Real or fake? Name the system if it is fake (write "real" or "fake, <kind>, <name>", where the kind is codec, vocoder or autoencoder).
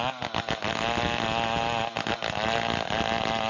real